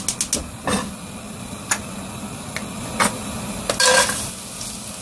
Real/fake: real